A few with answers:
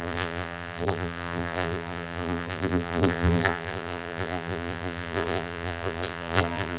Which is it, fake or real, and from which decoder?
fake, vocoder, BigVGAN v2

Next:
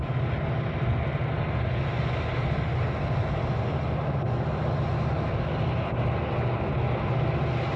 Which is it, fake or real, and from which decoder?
real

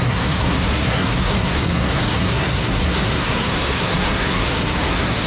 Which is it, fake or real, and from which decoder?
fake, codec, SNAC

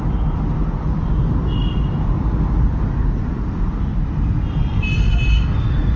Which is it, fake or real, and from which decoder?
real